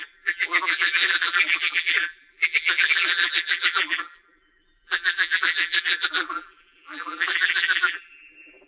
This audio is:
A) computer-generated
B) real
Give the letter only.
A